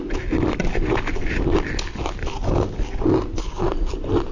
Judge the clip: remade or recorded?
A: recorded